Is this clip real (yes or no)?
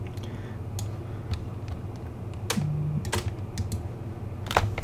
yes